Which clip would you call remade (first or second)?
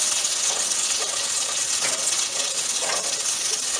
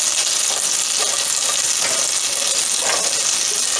first